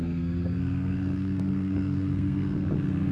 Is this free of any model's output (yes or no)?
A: no